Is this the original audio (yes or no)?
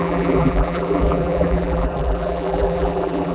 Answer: no